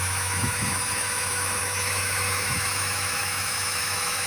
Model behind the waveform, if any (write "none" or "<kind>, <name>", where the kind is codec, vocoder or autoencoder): autoencoder, DAC-VAE